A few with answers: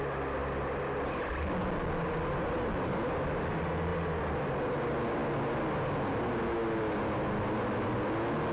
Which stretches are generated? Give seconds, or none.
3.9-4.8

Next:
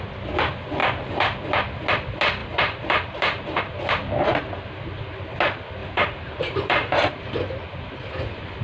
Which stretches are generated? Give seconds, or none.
0.8-1.4; 2.4-3.7; 5.8-7.3

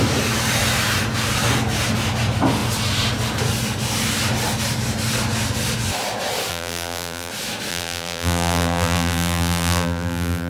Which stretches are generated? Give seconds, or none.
6.5-7.3; 7.7-10.5

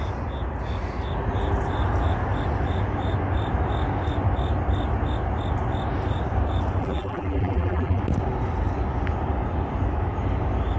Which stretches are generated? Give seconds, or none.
6.8-8.0

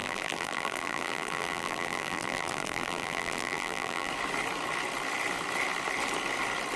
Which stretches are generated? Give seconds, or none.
0.0-4.1

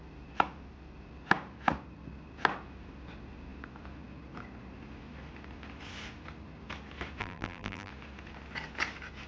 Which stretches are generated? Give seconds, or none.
7.2-7.9